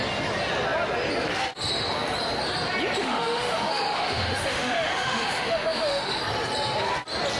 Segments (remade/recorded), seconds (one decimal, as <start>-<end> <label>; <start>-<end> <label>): 0.0-3.0 recorded; 3.0-6.2 remade; 6.2-7.4 recorded